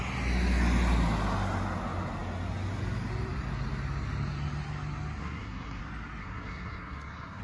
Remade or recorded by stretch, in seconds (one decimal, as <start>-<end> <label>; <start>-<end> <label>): 0.0-5.2 recorded; 5.2-5.8 remade; 5.8-6.2 recorded; 6.2-7.4 remade